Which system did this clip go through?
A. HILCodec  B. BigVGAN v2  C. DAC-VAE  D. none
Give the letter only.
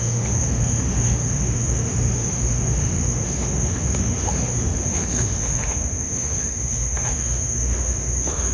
C